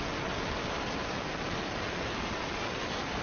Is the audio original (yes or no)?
yes